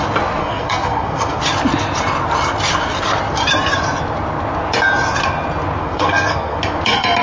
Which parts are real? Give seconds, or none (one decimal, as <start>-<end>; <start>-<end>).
0.0-0.4; 1.4-5.8; 6.6-7.2